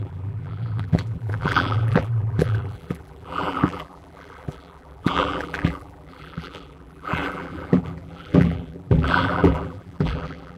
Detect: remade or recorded remade